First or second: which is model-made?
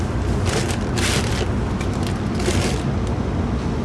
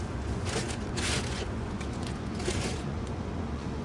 second